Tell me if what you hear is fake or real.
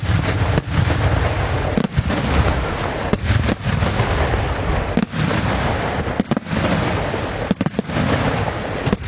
real